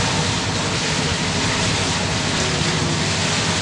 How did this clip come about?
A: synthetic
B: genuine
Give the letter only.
B